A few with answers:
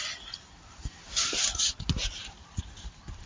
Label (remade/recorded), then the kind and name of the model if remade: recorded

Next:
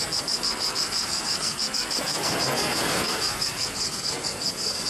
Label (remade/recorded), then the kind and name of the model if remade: remade, codec, SNAC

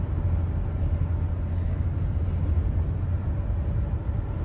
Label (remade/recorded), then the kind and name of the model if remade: recorded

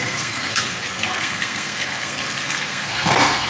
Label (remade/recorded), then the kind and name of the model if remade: remade, codec, SNAC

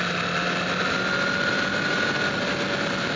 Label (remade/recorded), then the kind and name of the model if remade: recorded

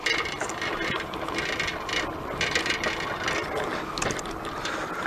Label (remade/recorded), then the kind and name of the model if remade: recorded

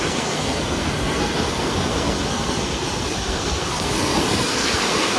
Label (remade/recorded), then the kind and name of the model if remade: remade, codec, SNAC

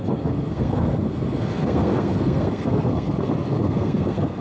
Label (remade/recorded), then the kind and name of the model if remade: remade, codec, SNAC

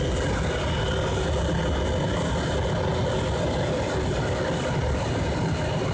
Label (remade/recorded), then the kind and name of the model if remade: recorded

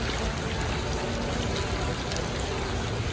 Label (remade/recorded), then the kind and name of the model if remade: recorded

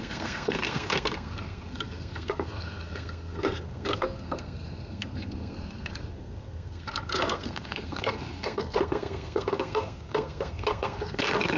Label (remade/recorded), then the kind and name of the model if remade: remade, codec, SNAC